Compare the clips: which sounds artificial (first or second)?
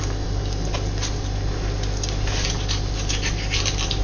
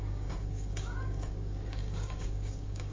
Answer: second